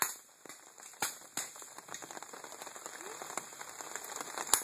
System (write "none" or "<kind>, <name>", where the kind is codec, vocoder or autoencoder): none